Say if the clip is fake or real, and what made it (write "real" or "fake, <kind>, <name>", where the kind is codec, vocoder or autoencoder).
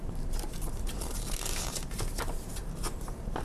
fake, vocoder, BigVGAN v2